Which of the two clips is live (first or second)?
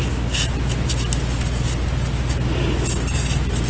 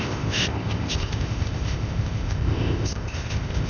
first